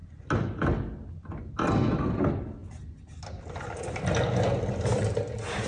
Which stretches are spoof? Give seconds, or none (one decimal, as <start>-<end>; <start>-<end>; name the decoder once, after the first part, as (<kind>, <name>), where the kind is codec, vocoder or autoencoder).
none